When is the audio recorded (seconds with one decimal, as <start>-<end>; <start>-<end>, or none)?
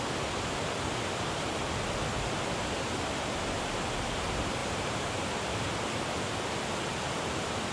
0.0-4.6; 5.2-7.7